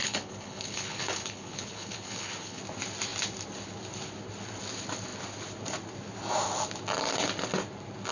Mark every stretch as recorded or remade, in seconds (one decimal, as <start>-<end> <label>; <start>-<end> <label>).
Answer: 0.0-2.6 remade; 2.6-8.1 recorded